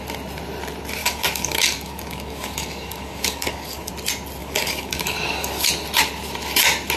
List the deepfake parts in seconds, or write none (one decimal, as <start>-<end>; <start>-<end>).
1.0-3.9; 4.4-5.7